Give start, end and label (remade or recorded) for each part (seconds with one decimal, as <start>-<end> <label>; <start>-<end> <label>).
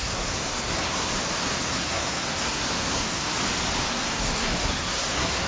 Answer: 0.0-1.1 remade; 1.1-1.7 recorded; 1.7-3.3 remade; 3.3-3.9 recorded; 3.9-5.5 remade